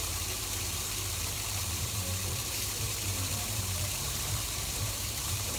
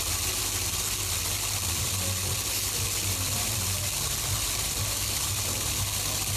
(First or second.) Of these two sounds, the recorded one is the second